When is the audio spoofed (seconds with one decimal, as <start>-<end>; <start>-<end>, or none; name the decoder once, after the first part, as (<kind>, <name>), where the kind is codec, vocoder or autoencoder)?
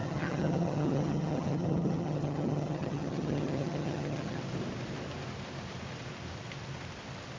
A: 0.0-4.4 (vocoder, HiFi-GAN)